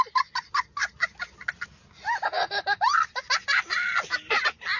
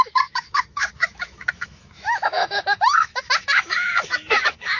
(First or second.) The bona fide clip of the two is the first